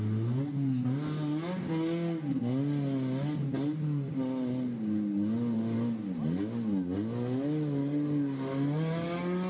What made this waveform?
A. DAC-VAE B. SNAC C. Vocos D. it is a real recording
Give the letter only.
D